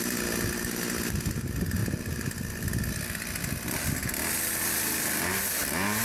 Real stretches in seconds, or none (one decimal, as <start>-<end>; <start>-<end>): 0.0-1.8; 5.2-6.0